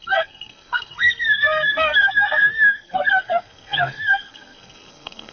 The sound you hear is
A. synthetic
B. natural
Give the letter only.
A